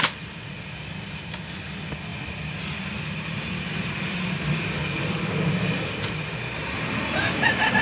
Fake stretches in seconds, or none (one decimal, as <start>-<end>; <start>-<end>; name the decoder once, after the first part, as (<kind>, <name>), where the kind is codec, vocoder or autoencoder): none